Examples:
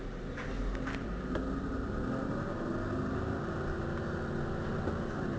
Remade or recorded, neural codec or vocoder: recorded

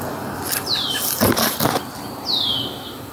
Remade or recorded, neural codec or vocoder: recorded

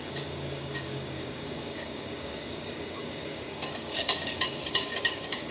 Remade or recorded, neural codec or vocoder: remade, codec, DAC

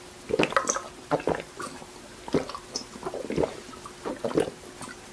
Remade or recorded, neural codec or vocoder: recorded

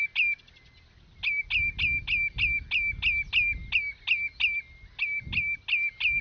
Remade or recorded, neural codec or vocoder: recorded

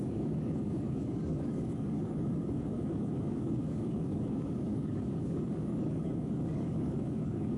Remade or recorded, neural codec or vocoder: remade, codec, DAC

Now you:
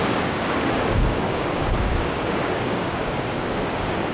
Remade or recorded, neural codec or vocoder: remade, codec, DAC